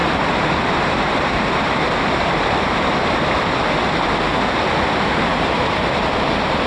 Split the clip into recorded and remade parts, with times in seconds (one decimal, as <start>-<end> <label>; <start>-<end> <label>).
0.0-1.8 remade; 1.8-5.3 recorded; 5.3-6.0 remade; 6.0-6.7 recorded